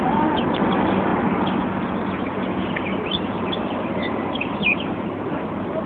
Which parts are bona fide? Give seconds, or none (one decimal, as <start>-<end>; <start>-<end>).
0.0-5.9